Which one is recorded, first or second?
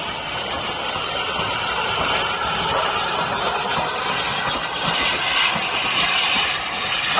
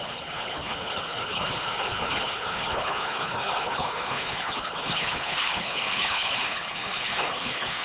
first